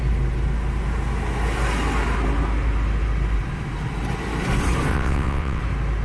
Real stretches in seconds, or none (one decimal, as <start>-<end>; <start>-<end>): 0.0-4.9; 5.6-6.0